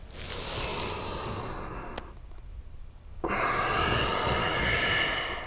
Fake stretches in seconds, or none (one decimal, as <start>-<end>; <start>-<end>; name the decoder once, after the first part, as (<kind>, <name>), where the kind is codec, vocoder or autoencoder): 4.4-5.0 (codec, DAC)